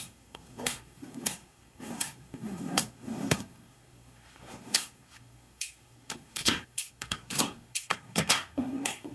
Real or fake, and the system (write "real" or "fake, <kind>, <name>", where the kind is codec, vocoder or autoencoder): fake, codec, SNAC